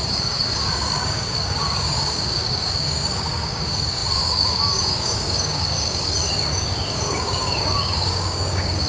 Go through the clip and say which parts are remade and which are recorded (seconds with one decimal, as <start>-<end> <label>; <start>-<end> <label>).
0.0-8.9 remade

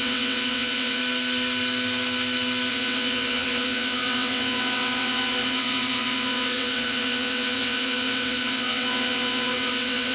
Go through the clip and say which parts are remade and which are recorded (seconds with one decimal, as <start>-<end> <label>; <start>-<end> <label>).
0.0-1.0 remade; 1.0-2.7 recorded; 2.7-10.1 remade

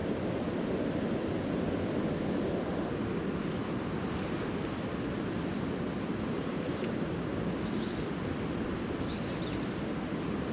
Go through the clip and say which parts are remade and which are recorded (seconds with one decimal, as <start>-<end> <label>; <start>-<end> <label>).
0.0-10.5 recorded